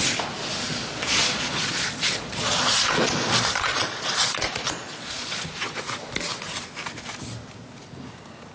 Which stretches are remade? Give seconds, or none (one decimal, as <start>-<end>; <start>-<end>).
0.7-5.8